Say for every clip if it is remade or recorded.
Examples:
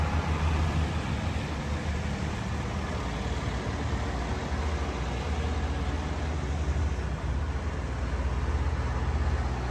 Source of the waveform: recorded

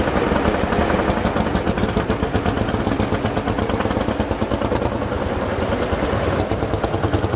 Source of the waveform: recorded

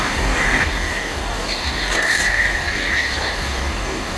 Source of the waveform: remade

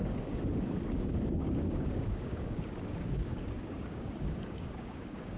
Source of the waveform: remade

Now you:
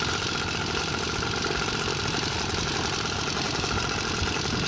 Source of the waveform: recorded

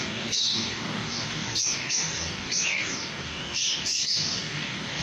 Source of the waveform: remade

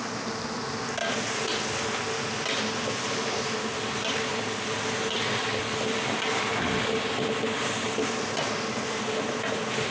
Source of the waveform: recorded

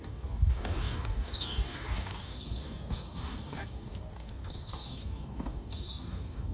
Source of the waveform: remade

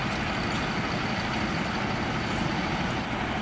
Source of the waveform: recorded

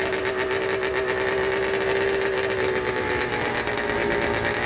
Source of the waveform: recorded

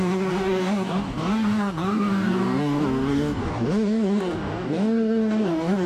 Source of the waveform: remade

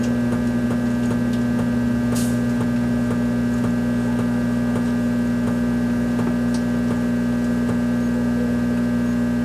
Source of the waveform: recorded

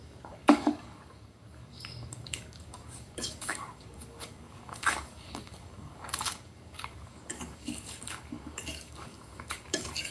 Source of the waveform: remade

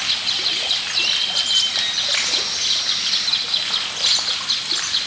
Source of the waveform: recorded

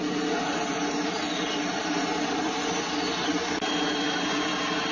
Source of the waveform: recorded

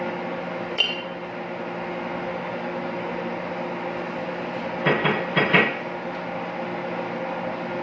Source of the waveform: recorded